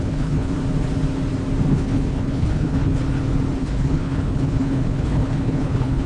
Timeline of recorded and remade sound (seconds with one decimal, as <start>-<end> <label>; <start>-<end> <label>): 0.0-0.5 remade; 0.5-1.7 recorded; 1.7-3.0 remade; 3.0-3.6 recorded; 3.6-6.1 remade